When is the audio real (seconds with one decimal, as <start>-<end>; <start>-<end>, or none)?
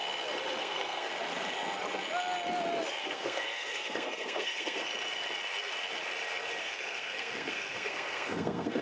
0.0-0.6; 1.1-3.0; 4.9-6.6